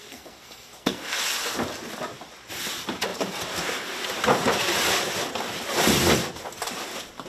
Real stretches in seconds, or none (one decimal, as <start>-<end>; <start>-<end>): 1.2-7.3